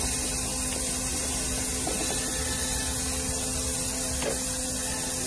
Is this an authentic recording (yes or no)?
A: yes